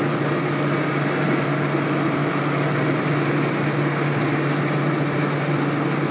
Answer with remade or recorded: recorded